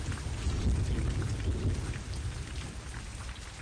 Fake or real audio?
real